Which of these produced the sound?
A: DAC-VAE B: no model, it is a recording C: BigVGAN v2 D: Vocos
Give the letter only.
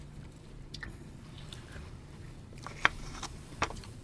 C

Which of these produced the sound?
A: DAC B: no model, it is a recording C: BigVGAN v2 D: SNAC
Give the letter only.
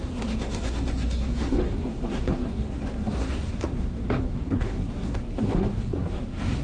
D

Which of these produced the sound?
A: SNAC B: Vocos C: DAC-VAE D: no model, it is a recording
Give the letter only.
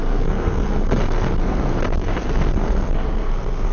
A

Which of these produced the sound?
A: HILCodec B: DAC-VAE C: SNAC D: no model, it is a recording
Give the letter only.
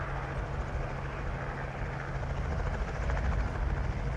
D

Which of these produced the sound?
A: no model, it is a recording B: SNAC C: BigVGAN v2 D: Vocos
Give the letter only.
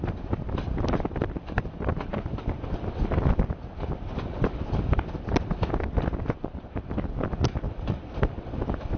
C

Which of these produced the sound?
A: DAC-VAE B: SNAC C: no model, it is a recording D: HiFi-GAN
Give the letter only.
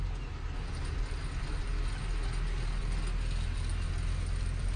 C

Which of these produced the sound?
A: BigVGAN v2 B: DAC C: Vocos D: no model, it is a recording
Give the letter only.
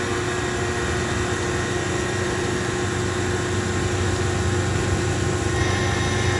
D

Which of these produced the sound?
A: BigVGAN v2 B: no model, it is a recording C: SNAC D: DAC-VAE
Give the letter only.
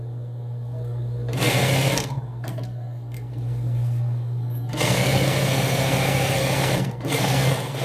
C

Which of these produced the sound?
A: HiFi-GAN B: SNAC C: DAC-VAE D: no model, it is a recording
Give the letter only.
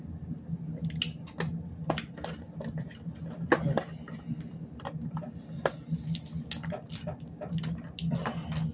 D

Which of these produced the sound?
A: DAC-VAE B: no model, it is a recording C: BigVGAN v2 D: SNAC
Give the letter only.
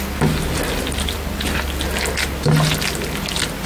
B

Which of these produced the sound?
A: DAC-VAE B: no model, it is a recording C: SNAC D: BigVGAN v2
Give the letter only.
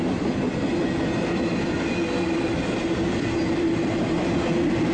B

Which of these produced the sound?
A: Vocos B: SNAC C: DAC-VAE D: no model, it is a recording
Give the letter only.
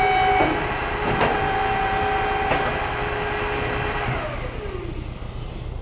D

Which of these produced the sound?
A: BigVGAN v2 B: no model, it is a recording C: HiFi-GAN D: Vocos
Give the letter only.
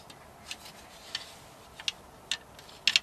B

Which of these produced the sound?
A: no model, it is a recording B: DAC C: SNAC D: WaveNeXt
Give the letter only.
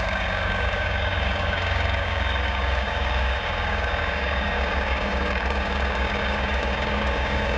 B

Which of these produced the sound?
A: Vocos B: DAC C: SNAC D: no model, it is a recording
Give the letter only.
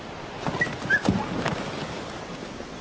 D